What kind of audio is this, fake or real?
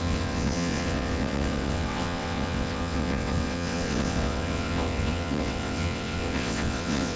fake